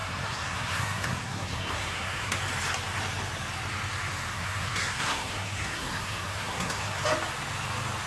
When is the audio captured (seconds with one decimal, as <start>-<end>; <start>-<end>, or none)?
2.4-4.3; 7.0-8.1